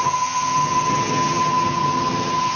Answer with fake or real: fake